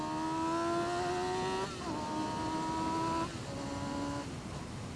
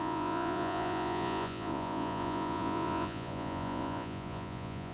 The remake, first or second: second